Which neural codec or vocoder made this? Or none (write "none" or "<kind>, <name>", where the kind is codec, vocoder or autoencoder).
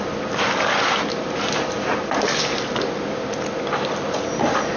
none